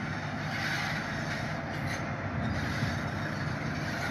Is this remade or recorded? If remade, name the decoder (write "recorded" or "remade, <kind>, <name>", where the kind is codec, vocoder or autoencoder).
recorded